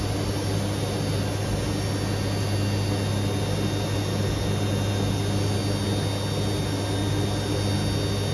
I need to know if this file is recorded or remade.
recorded